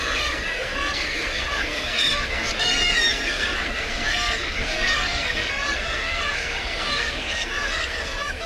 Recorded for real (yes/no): no